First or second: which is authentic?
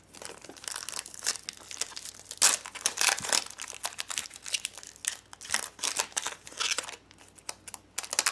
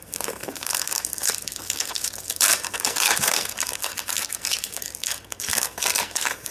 first